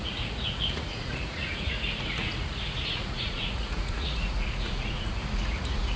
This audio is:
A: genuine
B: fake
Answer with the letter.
B